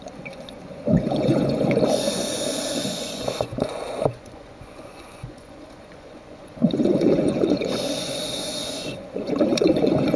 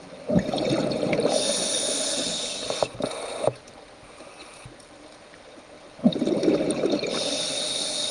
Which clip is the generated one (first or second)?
first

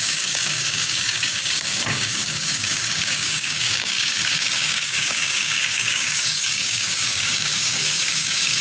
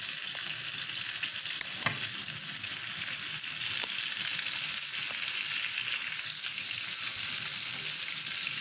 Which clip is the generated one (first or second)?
first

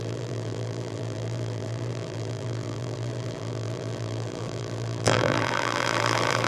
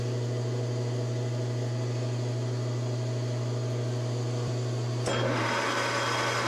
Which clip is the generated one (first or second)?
first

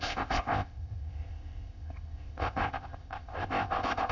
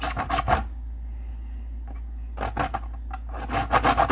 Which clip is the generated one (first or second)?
first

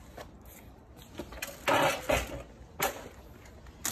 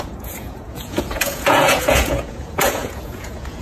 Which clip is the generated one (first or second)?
second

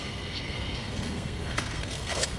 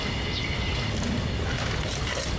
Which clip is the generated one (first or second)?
first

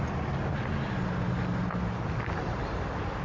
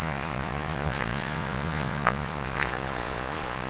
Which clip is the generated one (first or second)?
second